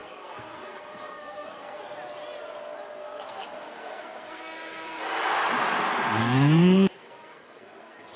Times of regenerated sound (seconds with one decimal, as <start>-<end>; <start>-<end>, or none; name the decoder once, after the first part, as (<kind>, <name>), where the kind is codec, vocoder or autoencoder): 0.0-1.8 (codec, SNAC); 3.0-5.0; 6.2-8.2